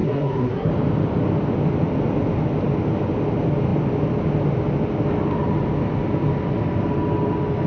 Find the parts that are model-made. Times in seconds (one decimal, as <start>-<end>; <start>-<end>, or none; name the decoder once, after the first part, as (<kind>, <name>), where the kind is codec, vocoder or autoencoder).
0.0-0.7 (codec, SNAC)